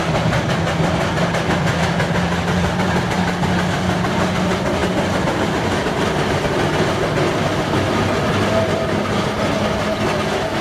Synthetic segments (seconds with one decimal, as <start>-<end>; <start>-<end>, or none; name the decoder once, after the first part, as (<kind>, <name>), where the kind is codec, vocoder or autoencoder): none